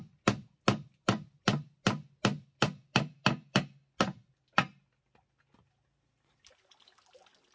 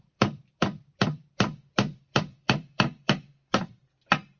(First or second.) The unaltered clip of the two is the first